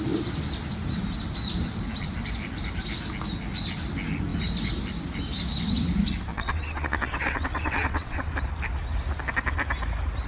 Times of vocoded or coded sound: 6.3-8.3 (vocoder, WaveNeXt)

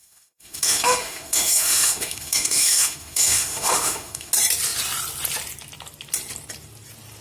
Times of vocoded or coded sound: 0.0-4.3 (autoencoder, DAC-VAE)

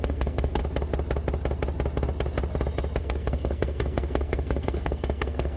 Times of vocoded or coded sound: 0.0-0.6 (codec, SNAC); 3.0-5.6